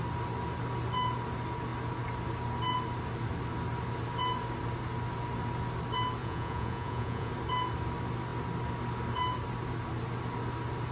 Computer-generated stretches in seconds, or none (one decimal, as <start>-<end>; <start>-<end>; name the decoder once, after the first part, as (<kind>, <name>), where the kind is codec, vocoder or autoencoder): 6.2-7.3 (vocoder, Vocos)